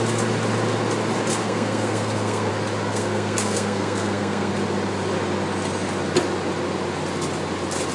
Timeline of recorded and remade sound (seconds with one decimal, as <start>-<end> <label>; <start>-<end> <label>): 0.0-1.4 recorded; 1.4-2.5 remade; 2.5-2.9 recorded; 2.9-4.5 remade; 4.5-7.9 recorded